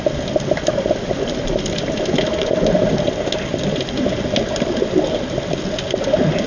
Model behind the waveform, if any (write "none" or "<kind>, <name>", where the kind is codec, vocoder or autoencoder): none